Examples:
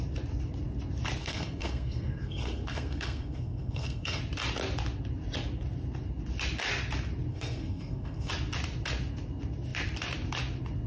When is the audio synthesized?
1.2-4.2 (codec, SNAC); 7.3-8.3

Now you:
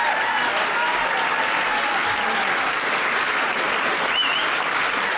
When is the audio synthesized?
none

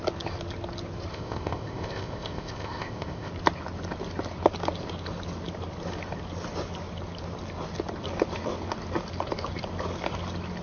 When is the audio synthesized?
1.1-3.3 (codec, ZipCodec)

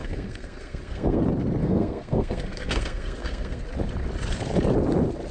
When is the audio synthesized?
0.0-1.2 (codec, SNAC); 1.6-3.6